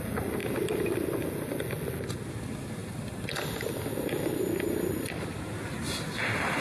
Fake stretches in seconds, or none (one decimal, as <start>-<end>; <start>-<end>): 2.8-5.5

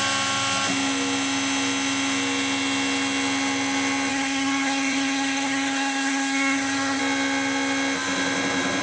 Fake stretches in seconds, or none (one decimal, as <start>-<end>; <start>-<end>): 4.1-7.0

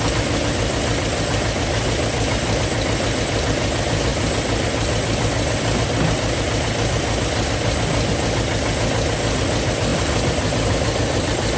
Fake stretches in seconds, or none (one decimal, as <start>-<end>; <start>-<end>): 9.9-11.6

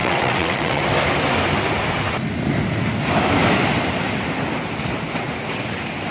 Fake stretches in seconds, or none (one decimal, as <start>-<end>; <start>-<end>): 0.0-0.8